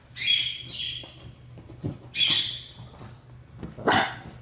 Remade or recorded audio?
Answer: recorded